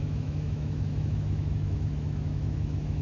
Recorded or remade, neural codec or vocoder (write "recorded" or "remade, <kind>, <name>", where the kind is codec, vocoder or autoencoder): remade, autoencoder, DAC-VAE